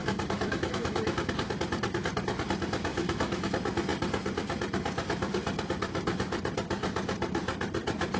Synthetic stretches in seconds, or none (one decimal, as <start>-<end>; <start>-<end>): 0.0-1.3; 2.9-3.5